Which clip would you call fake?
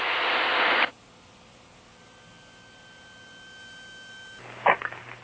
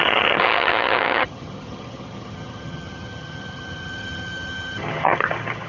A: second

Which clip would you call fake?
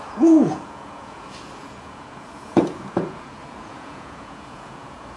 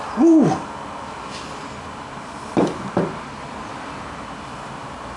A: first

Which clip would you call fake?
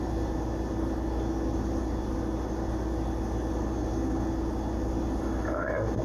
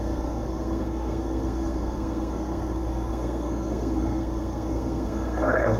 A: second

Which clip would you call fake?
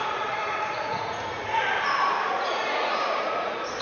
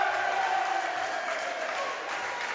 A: first